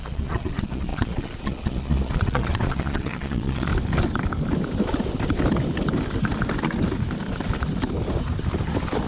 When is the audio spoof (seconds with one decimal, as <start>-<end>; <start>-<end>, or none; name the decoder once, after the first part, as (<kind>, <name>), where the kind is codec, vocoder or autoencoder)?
0.0-3.7 (vocoder, Vocos)